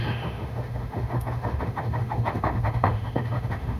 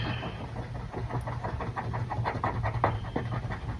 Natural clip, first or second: second